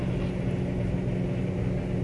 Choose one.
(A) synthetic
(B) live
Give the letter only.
B